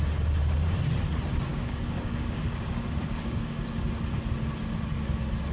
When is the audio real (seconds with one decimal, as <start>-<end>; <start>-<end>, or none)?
0.0-1.5; 3.6-5.5